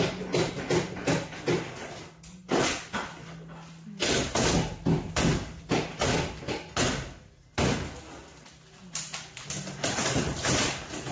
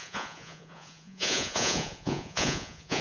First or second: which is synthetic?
second